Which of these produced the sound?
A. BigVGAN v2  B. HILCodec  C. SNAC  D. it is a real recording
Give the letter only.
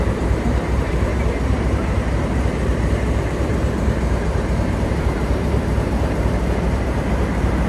A